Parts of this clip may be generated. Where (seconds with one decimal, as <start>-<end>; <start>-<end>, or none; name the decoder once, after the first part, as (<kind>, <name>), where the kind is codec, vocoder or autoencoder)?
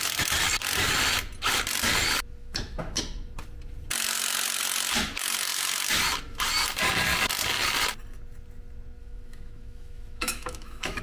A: 2.4-3.0 (autoencoder, DAC-VAE); 9.0-11.0